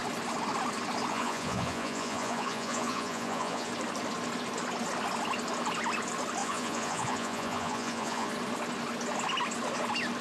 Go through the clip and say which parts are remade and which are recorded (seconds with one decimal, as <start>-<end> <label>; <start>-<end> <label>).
0.0-1.1 recorded; 1.1-3.7 remade; 3.7-6.4 recorded; 6.4-8.3 remade; 8.3-10.2 recorded